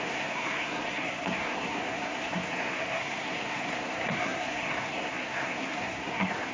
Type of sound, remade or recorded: remade